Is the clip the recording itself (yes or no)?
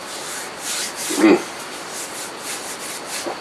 yes